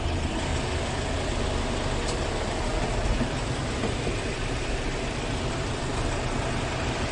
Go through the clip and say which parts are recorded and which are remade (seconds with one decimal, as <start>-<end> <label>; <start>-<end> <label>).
0.0-0.5 remade; 0.5-2.8 recorded; 2.8-7.1 remade